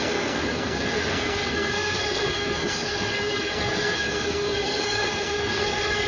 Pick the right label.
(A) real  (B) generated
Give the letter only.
B